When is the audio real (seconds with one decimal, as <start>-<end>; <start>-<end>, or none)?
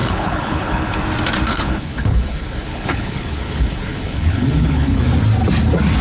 1.0-1.5; 5.0-6.0